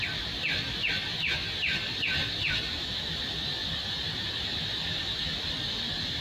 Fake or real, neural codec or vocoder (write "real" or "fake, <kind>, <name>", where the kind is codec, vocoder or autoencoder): real